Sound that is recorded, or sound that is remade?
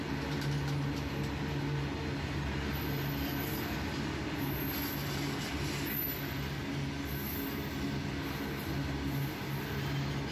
recorded